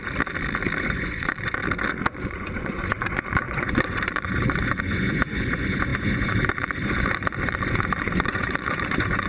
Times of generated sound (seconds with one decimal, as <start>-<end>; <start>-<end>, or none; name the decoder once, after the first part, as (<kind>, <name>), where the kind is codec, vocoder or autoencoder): 0.8-1.6 (vocoder, Vocos); 2.1-9.3